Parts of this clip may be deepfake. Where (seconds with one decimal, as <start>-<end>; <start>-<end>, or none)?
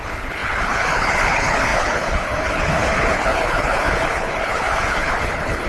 0.0-5.7